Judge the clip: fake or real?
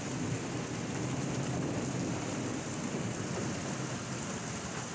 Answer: fake